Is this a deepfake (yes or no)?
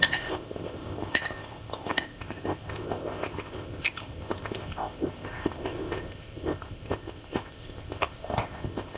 yes